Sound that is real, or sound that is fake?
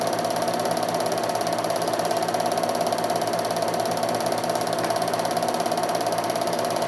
real